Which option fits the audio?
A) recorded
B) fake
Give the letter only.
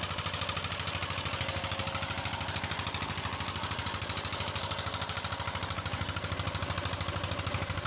A